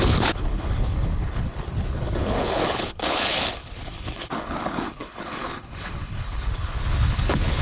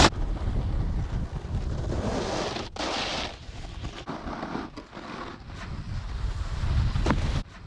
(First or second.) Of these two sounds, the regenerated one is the first